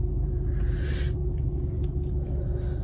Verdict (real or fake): real